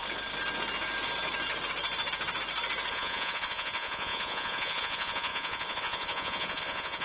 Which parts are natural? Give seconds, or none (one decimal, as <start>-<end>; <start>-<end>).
0.0-2.9